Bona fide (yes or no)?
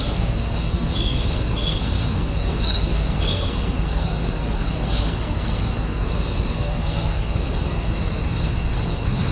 no